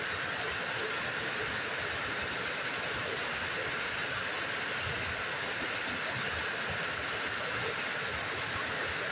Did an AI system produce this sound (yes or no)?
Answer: no